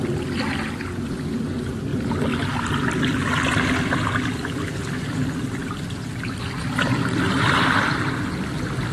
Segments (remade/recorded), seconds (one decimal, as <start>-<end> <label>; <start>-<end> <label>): 0.0-5.6 recorded; 5.6-7.9 remade; 7.9-8.9 recorded